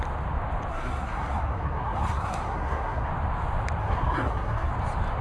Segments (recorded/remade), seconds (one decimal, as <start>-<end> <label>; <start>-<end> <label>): 0.0-0.7 recorded; 0.7-3.1 remade; 3.1-3.8 recorded; 3.8-4.7 remade; 4.7-5.2 recorded